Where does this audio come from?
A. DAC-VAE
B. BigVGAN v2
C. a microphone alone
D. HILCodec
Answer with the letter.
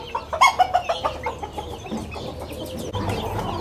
C